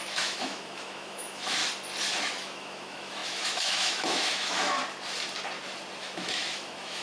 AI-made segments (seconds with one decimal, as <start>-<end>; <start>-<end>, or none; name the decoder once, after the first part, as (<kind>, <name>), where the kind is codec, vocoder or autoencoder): 0.0-1.6 (autoencoder, DAC-VAE); 2.2-4.8; 6.0-7.0